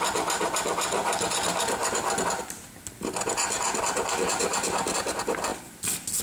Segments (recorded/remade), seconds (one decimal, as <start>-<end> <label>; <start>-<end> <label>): 0.0-6.2 recorded

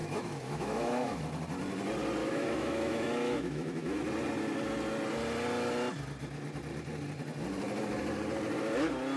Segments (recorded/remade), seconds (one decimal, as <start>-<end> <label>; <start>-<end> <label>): 0.0-1.2 remade; 1.2-2.2 recorded; 2.2-4.0 remade; 4.0-9.2 recorded

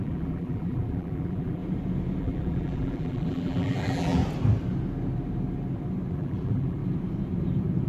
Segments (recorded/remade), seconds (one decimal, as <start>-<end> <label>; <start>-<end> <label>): 0.0-1.6 remade; 1.6-2.2 recorded; 2.2-4.2 remade; 4.2-6.1 recorded; 6.1-6.8 remade; 6.8-7.9 recorded

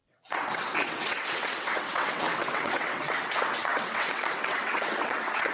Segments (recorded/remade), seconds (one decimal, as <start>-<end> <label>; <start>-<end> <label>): 0.0-5.5 remade

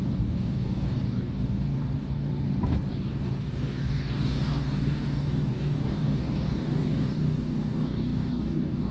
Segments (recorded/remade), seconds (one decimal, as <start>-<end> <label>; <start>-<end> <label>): 0.0-2.3 remade; 2.3-2.9 recorded; 2.9-8.9 remade

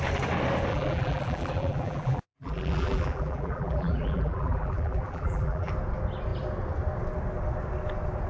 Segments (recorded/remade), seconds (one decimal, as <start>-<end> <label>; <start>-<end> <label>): 0.0-0.7 recorded; 0.7-5.7 remade; 5.7-8.3 recorded

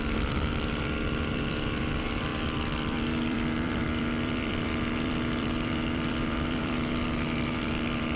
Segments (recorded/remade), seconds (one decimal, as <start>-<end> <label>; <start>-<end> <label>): 0.0-8.2 remade

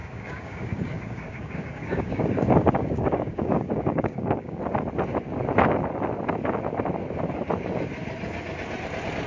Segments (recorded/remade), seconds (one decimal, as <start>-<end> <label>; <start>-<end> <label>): 0.0-4.6 remade; 4.6-9.3 recorded